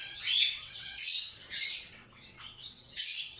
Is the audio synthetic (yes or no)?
yes